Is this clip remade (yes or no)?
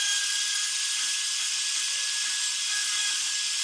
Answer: yes